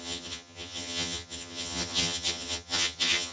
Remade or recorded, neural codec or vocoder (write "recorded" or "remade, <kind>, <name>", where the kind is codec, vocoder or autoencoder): remade, vocoder, HiFi-GAN